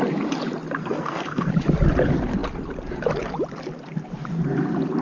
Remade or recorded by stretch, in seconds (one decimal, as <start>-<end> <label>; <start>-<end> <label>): 0.0-0.8 recorded; 0.8-1.5 remade; 1.5-5.0 recorded